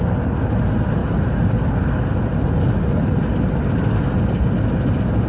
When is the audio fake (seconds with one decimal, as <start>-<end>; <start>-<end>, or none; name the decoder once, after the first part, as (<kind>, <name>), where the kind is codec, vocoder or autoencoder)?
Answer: none